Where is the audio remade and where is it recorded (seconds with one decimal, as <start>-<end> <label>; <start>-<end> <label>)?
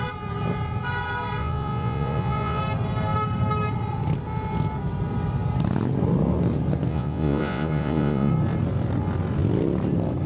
0.0-1.4 recorded; 1.4-2.6 remade; 2.6-6.9 recorded; 6.9-8.3 remade; 8.3-10.3 recorded